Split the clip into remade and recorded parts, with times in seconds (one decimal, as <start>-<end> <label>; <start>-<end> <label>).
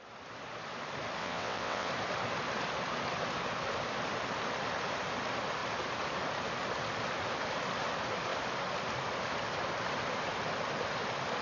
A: 0.0-1.2 recorded; 1.2-1.9 remade; 1.9-11.4 recorded